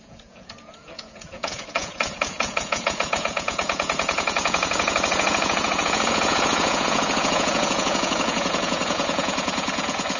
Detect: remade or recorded remade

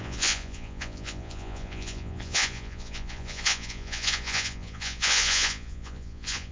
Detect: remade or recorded remade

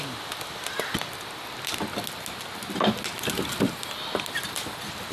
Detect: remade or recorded recorded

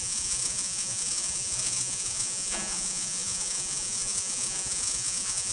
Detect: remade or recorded remade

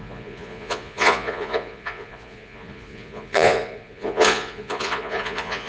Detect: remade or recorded remade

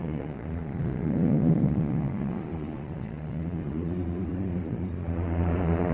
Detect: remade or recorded remade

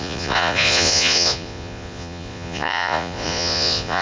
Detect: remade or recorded remade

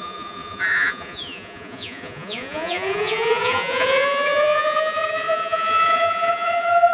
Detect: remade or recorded remade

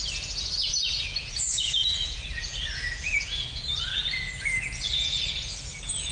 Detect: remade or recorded remade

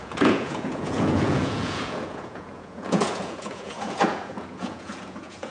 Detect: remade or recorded remade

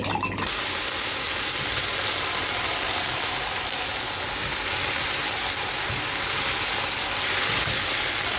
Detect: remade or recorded recorded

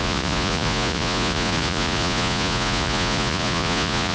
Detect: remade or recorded remade